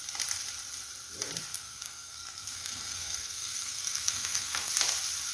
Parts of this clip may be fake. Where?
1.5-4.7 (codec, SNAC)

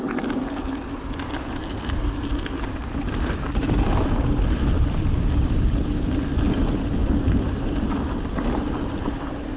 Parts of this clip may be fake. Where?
none

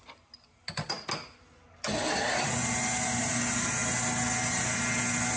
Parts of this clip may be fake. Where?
none

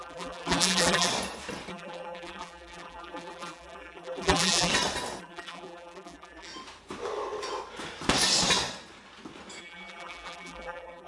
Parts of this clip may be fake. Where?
0.0-1.1 (vocoder, BigVGAN v2); 1.7-4.7; 5.2-6.5; 9.6-11.1

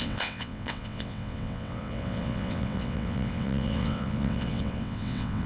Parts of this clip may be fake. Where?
0.0-5.5 (vocoder, WaveNeXt)

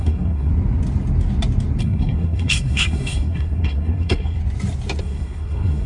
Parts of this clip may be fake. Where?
0.0-0.5 (codec, SNAC); 1.8-4.4; 5.0-5.9